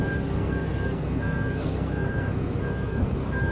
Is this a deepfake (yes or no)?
yes